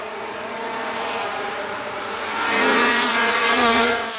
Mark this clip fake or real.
fake